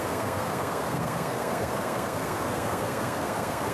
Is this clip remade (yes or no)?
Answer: yes